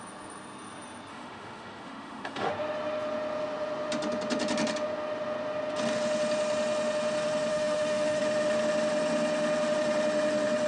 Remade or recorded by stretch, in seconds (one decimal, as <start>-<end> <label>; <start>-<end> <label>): 0.0-1.1 recorded; 1.1-2.5 remade; 2.5-7.5 recorded; 7.5-8.2 remade; 8.2-10.7 recorded